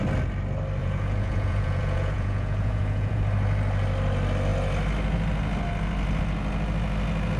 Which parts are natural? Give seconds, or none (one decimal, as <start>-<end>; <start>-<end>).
0.0-0.8; 3.2-7.4